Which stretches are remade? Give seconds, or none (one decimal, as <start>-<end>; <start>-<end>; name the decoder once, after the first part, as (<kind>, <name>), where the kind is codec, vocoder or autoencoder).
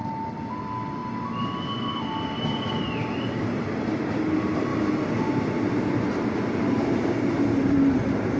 0.6-1.0 (vocoder, BigVGAN v2); 2.0-4.7; 6.6-8.4